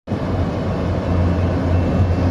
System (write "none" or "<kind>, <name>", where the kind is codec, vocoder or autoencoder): none